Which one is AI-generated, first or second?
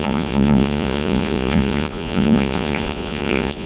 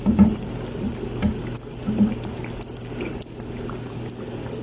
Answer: first